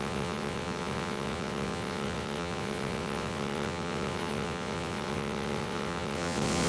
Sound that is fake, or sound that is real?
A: fake